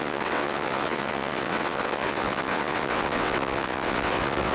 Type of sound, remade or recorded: remade